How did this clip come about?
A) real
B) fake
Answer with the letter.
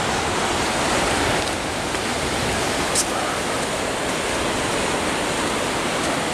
A